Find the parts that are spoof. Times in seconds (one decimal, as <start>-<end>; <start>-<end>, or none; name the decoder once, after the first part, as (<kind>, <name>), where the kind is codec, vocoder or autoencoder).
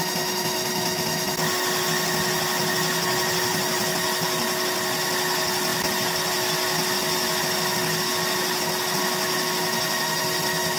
none